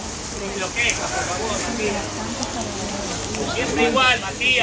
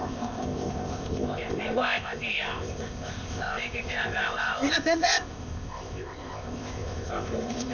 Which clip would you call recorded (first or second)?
first